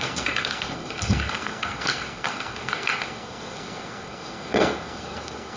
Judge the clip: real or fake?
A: fake